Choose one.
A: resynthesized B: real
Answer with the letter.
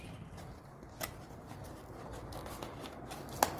B